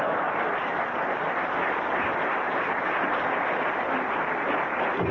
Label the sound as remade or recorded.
recorded